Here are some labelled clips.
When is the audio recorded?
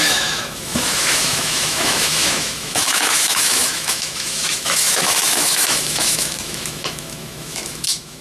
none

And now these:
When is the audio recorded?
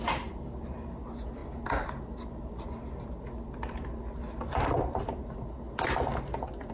0.0-6.7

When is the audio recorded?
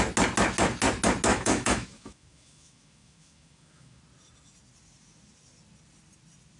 0.0-1.3; 4.0-6.6